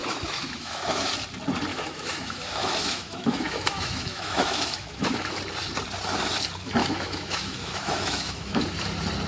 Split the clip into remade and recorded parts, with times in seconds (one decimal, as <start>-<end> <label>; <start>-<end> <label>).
0.0-1.1 remade; 1.1-1.7 recorded; 1.7-5.4 remade; 5.4-6.8 recorded; 6.8-8.6 remade; 8.6-9.3 recorded